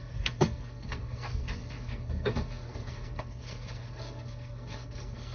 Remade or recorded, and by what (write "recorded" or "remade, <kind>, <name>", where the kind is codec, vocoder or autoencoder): remade, codec, SNAC